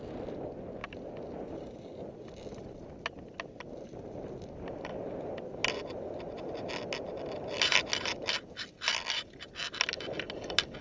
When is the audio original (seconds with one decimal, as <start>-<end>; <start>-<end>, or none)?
0.0-10.8